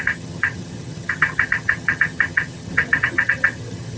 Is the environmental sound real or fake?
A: fake